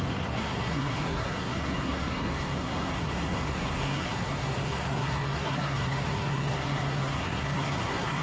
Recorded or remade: remade